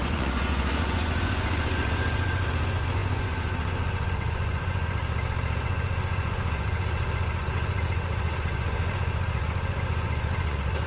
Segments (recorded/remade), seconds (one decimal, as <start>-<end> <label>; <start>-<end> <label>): 0.0-5.0 remade; 5.0-5.6 recorded; 5.6-10.9 remade